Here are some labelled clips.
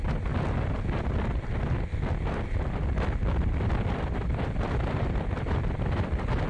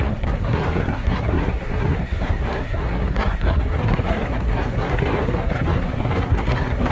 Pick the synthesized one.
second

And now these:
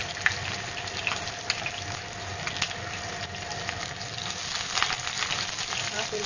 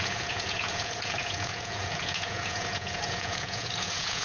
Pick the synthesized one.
second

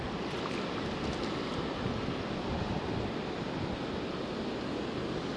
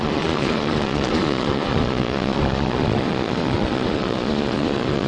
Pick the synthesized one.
second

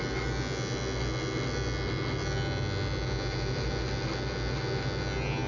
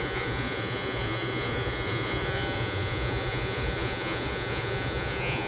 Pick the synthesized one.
second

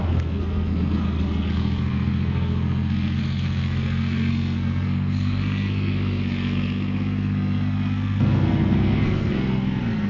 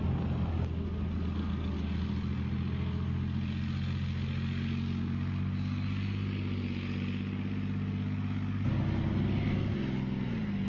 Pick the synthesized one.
first